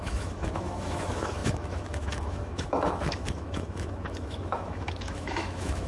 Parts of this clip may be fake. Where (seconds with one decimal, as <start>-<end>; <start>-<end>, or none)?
0.0-5.9